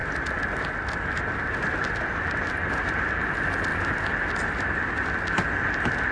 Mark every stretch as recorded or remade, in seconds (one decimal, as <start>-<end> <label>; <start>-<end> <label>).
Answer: 0.0-6.1 recorded